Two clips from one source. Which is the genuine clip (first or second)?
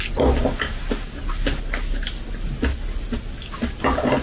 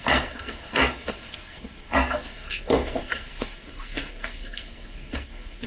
first